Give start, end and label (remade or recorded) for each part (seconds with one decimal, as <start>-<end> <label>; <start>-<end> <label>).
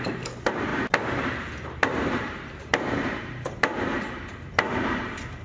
0.0-5.4 remade